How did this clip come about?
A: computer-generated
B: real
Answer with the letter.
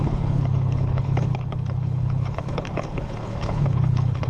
A